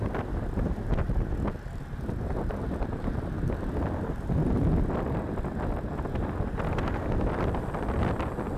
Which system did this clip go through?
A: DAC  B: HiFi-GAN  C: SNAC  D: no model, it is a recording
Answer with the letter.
D